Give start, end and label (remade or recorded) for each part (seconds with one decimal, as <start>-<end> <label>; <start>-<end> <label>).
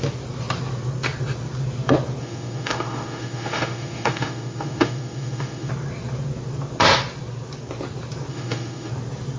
0.0-2.2 recorded; 2.2-5.7 remade; 5.7-8.3 recorded; 8.3-8.9 remade; 8.9-9.4 recorded